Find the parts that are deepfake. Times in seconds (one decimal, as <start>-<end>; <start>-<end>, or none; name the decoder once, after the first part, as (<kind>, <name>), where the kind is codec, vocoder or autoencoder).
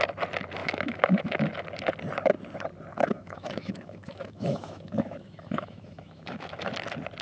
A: 0.6-1.5 (autoencoder, DAC-VAE); 2.9-6.7